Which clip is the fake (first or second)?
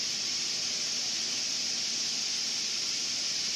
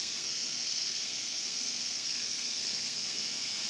second